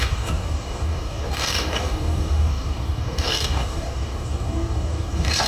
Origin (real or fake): fake